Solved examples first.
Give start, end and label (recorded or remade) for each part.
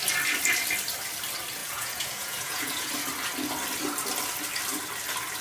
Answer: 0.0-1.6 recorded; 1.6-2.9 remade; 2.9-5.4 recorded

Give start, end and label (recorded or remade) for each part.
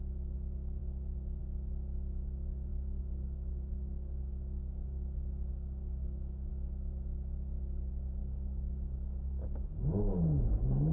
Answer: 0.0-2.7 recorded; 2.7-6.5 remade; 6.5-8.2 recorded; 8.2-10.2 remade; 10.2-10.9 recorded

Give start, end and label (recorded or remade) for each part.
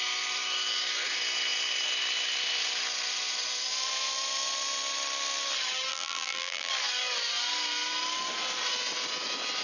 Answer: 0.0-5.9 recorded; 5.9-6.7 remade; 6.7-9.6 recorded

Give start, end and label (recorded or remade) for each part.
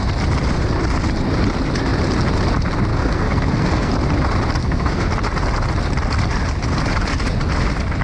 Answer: 0.0-2.9 recorded; 2.9-3.9 remade; 3.9-4.6 recorded; 4.6-5.1 remade; 5.1-8.0 recorded